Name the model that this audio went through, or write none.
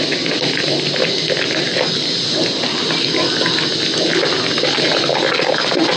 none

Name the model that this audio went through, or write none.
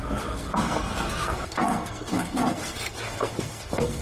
codec, SNAC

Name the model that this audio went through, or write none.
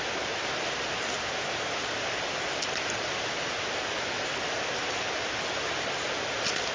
none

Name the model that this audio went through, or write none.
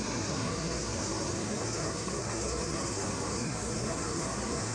codec, SNAC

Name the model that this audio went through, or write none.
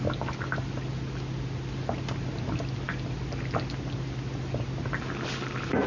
none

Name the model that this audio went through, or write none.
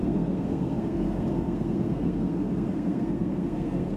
codec, SNAC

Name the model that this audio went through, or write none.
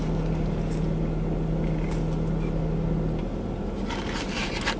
none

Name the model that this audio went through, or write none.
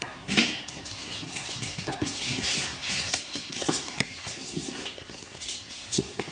codec, SNAC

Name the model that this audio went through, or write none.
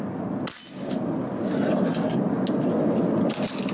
none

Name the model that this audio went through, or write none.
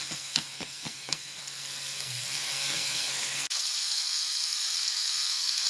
codec, SNAC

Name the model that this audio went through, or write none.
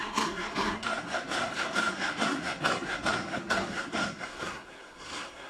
codec, SNAC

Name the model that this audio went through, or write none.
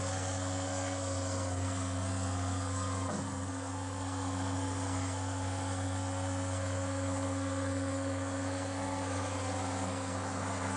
codec, SNAC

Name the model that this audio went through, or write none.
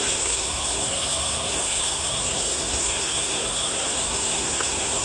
codec, SNAC